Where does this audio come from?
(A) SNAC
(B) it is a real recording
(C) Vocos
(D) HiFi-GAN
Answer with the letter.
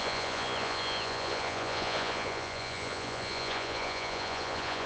C